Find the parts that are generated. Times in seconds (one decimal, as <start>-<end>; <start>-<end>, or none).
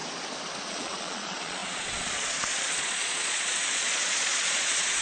0.7-5.0